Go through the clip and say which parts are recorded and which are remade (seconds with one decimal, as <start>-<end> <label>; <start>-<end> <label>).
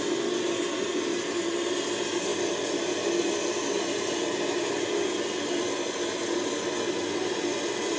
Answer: 0.0-8.0 recorded